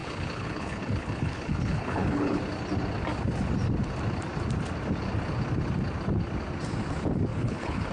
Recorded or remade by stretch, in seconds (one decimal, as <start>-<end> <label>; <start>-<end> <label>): 0.0-2.4 remade; 2.4-7.3 recorded; 7.3-7.9 remade